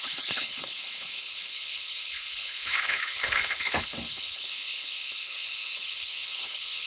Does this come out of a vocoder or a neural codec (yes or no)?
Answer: yes